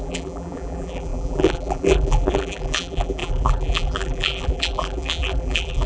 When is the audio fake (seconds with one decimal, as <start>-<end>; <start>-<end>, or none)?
0.0-5.9